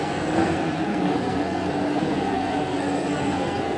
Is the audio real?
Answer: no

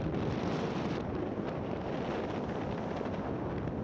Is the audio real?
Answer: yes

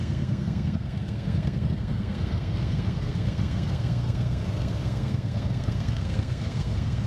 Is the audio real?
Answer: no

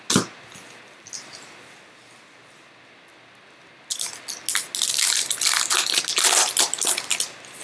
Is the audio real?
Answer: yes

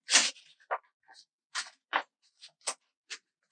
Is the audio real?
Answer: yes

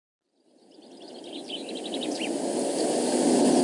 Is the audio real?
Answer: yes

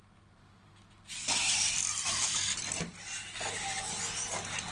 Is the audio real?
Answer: yes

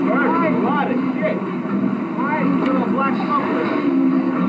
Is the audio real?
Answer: yes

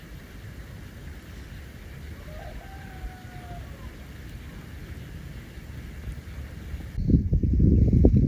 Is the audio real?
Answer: yes